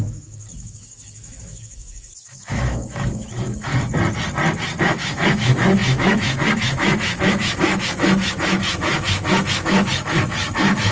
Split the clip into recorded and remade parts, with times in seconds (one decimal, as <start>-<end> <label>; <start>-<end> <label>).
0.0-3.7 remade; 3.7-4.8 recorded; 4.8-10.9 remade

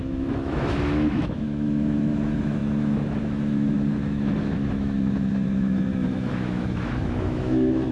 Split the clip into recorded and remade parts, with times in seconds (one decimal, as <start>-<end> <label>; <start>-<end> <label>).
0.0-7.9 remade

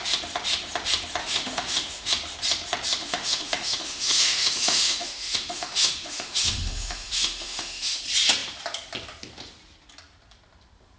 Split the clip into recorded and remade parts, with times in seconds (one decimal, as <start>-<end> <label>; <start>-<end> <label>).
0.0-1.2 recorded; 1.2-2.1 remade; 2.1-3.0 recorded; 3.0-8.0 remade; 8.0-11.0 recorded

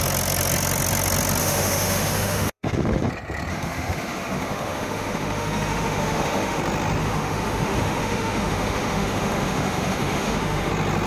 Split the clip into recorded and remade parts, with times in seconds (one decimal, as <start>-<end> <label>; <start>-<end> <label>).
0.0-1.4 recorded; 1.4-3.1 remade; 3.1-3.5 recorded; 3.5-6.6 remade; 6.6-7.0 recorded; 7.0-10.7 remade; 10.7-11.1 recorded

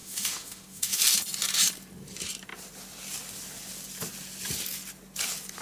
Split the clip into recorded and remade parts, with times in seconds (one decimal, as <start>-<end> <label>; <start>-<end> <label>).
0.0-1.0 remade; 1.0-5.6 recorded

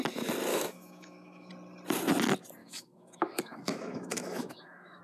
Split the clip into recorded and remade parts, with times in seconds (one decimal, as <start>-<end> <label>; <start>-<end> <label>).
0.0-0.5 recorded; 0.5-1.5 remade; 1.5-2.6 recorded; 2.6-5.0 remade